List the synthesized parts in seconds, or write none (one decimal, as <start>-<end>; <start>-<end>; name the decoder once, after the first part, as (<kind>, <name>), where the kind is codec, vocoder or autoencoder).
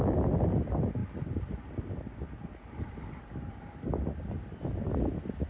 none